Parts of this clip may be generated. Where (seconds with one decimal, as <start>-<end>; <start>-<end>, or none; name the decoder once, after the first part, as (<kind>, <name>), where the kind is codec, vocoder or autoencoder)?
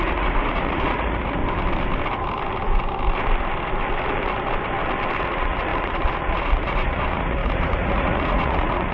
0.0-1.4 (vocoder, Vocos); 5.2-8.9